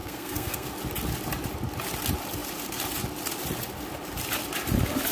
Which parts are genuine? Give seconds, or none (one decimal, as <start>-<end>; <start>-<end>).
0.7-5.1